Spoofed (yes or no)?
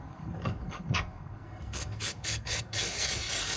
yes